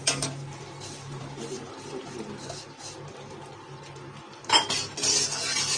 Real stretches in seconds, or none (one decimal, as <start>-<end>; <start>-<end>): 0.0-5.8